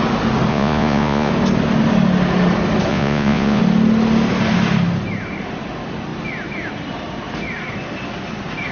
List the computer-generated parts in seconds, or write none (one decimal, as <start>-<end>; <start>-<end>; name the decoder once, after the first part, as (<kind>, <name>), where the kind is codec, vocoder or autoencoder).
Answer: 0.5-1.3 (vocoder, Vocos); 2.9-3.6